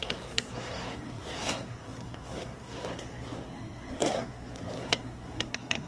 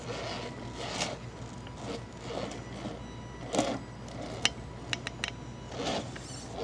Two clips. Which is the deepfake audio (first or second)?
first